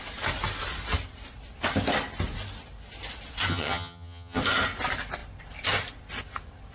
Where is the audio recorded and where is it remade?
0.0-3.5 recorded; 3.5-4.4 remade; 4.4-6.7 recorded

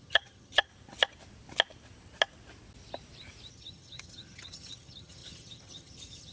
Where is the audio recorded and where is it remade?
0.0-0.7 remade; 0.7-3.5 recorded; 3.5-6.3 remade

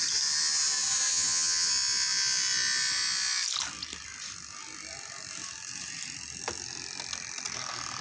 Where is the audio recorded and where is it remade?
0.0-1.1 recorded; 1.1-1.7 remade; 1.7-8.0 recorded